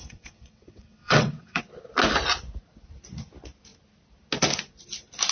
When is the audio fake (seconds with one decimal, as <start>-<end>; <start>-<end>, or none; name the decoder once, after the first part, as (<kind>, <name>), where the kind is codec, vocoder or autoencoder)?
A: 0.0-1.6 (vocoder, WaveNeXt)